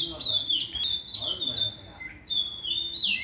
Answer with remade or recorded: recorded